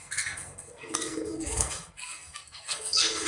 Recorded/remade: remade